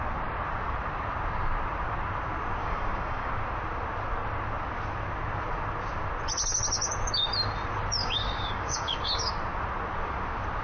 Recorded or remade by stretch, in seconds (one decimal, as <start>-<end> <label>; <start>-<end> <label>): 0.0-2.6 recorded; 2.6-3.3 remade; 3.3-8.0 recorded; 8.0-9.3 remade; 9.3-10.6 recorded